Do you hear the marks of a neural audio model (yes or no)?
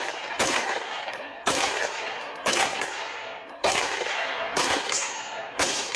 yes